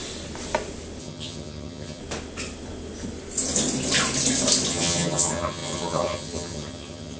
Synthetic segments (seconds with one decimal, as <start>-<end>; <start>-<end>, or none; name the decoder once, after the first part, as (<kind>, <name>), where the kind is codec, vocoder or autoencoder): 1.0-2.0 (vocoder, HiFi-GAN); 4.7-7.2